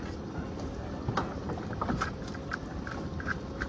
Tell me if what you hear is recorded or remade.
recorded